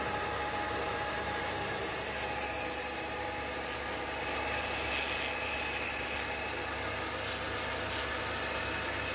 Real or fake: real